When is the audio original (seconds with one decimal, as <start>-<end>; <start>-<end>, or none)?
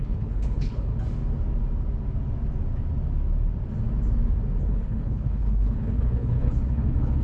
0.9-4.6